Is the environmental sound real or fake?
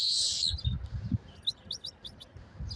real